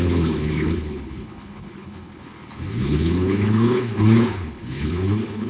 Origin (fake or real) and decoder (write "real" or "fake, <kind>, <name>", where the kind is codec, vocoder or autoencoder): fake, codec, HILCodec